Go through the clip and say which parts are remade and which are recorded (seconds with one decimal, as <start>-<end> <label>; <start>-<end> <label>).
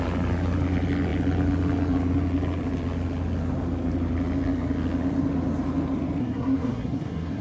0.0-6.2 recorded; 6.2-7.4 remade